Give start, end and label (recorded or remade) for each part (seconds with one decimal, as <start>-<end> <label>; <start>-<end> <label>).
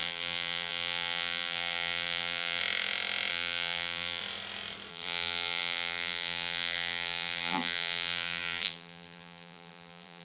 0.0-2.6 remade; 2.6-3.3 recorded; 3.3-4.2 remade; 4.2-4.9 recorded; 4.9-10.2 remade